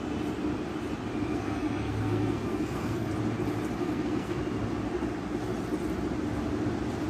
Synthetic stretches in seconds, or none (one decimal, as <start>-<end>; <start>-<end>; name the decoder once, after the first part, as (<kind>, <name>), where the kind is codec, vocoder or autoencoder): 1.3-3.1 (codec, SNAC); 3.8-4.4